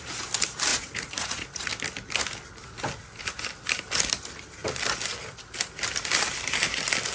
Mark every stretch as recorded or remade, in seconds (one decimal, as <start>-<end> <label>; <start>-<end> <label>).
0.0-0.7 recorded; 0.7-1.7 remade; 1.7-7.1 recorded